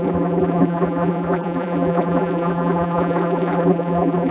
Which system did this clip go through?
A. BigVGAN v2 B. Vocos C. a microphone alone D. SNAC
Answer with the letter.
A